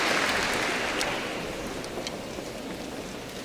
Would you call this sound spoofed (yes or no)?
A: no